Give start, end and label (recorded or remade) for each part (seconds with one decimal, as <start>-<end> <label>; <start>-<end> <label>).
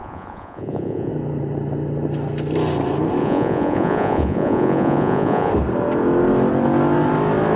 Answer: 0.0-1.1 remade; 1.1-3.2 recorded; 3.2-5.5 remade; 5.5-7.6 recorded